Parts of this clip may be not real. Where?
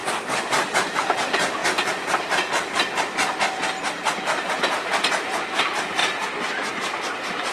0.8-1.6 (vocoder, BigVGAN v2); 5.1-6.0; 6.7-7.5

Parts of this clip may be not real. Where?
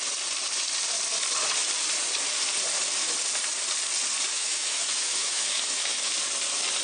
4.3-6.1 (autoencoder, DAC-VAE)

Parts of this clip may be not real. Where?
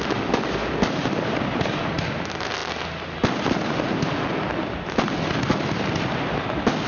none